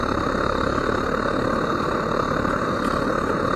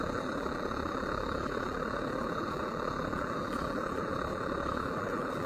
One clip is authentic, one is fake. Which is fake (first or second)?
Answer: second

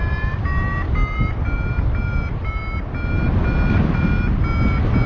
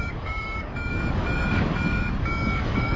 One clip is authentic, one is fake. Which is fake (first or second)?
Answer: second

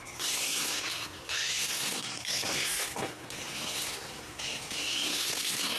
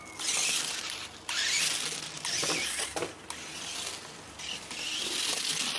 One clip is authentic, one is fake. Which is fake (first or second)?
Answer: first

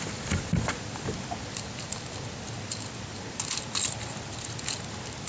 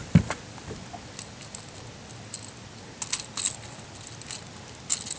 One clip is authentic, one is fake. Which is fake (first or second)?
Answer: first